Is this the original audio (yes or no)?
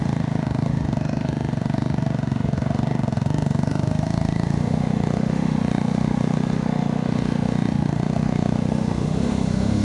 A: no